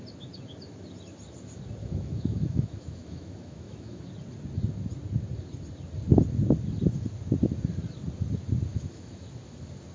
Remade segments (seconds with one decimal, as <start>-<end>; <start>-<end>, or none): 1.8-4.1; 8.7-9.3